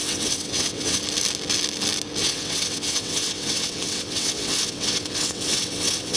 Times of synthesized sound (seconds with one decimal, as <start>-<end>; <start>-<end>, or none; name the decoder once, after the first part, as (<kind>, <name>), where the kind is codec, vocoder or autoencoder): 0.0-1.0 (vocoder, WaveNeXt); 2.2-6.2